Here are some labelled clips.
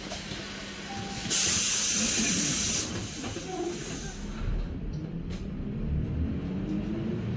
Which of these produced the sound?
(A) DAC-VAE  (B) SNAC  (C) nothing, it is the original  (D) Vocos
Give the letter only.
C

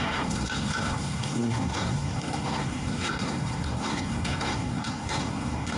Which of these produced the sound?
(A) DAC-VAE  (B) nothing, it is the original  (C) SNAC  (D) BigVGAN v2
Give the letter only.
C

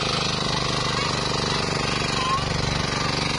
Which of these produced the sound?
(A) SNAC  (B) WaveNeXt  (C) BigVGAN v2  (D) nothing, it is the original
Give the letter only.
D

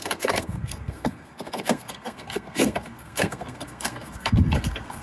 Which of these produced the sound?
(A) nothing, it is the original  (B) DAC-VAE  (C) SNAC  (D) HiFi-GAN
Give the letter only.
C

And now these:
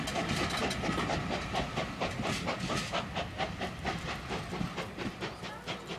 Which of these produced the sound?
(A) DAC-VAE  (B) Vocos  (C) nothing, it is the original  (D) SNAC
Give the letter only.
C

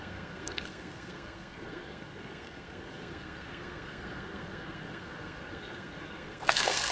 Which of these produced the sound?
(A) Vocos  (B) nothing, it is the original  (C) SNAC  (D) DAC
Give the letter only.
C